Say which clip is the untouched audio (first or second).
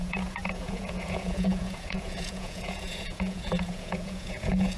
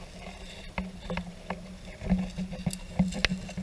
second